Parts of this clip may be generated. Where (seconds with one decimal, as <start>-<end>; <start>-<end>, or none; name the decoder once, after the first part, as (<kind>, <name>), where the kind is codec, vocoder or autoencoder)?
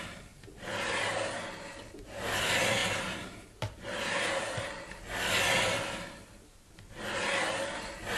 2.8-5.0 (vocoder, BigVGAN v2)